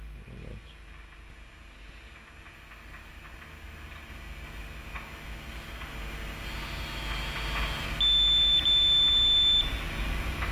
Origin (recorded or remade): recorded